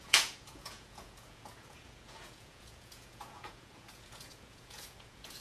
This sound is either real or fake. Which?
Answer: fake